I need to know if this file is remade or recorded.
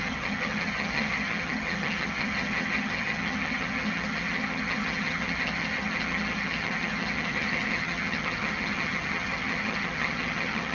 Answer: remade